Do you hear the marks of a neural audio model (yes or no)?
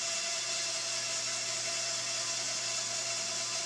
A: no